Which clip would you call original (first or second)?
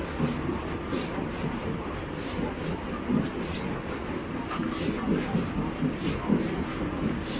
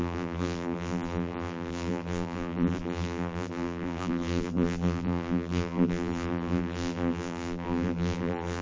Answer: first